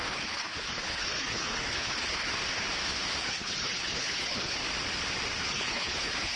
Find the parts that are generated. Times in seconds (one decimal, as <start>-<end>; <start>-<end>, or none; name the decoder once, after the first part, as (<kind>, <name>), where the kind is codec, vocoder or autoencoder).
0.0-2.3 (codec, HILCodec); 3.2-4.6; 5.4-6.4